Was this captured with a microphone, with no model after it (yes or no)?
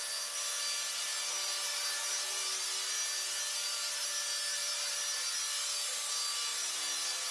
yes